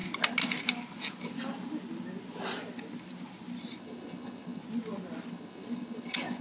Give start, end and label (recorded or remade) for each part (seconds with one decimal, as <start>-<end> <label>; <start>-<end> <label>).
0.0-3.8 recorded; 3.8-4.6 remade; 4.6-5.3 recorded; 5.3-6.4 remade